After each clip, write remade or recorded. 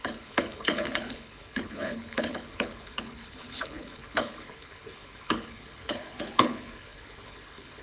remade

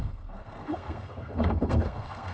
remade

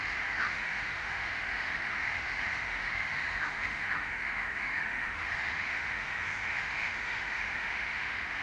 remade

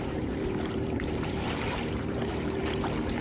remade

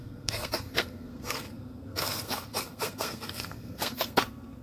remade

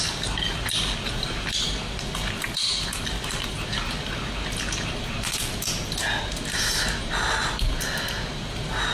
recorded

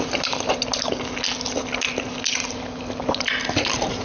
recorded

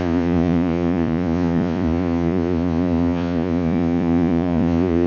remade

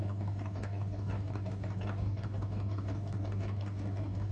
remade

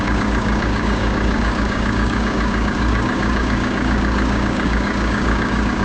remade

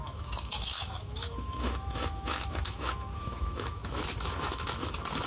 remade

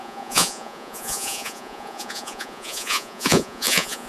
remade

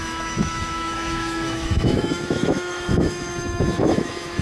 remade